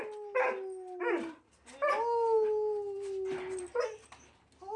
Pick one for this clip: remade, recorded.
recorded